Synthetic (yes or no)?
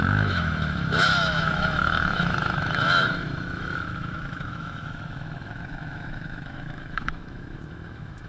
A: yes